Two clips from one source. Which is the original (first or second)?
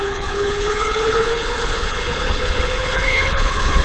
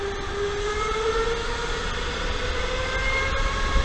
second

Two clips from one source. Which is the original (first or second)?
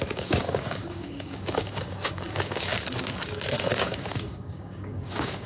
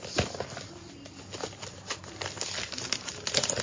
second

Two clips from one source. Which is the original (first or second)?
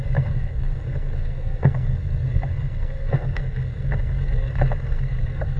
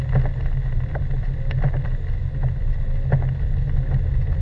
second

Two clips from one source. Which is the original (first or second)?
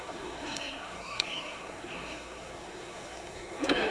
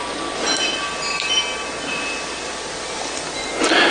second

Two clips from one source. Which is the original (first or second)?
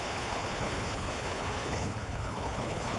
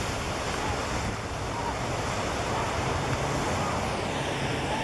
second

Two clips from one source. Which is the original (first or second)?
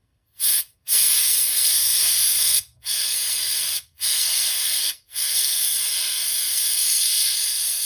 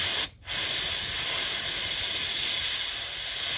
second